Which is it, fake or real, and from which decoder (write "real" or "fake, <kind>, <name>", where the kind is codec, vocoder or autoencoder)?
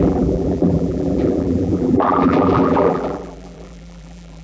fake, vocoder, BigVGAN v2